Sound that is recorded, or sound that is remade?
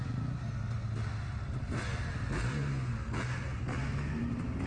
recorded